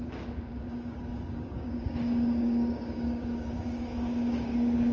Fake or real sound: fake